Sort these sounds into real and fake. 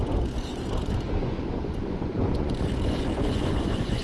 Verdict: fake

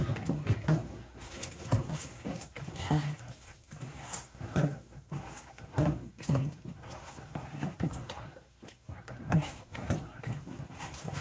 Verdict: fake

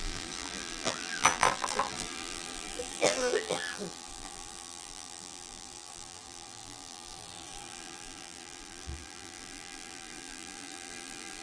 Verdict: fake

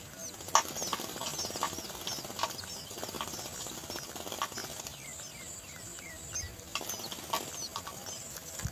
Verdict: real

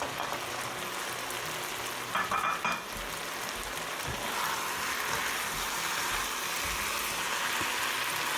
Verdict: real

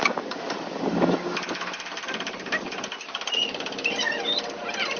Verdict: real